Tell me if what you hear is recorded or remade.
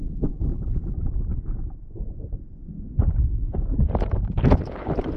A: recorded